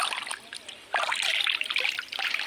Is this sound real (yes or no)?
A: no